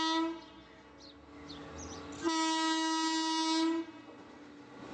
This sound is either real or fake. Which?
real